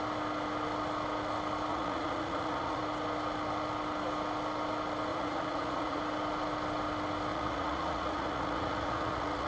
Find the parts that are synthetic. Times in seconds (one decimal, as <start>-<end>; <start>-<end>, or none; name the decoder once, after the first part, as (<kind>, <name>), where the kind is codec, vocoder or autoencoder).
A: 1.7-2.8 (vocoder, Vocos); 5.1-6.0; 7.3-9.5